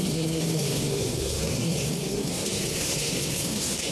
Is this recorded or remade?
remade